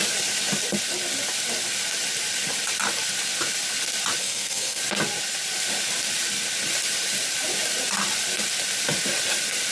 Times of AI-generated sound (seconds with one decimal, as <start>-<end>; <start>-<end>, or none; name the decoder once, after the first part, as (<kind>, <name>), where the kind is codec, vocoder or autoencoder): 4.2-4.8 (codec, SNAC)